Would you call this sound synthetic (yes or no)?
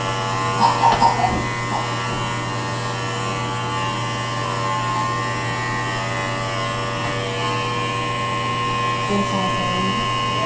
no